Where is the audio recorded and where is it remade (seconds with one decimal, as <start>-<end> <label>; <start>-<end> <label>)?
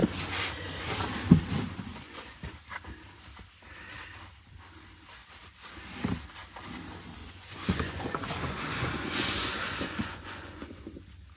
0.0-1.9 recorded; 1.9-2.4 remade; 2.4-7.2 recorded; 7.2-10.9 remade; 10.9-11.4 recorded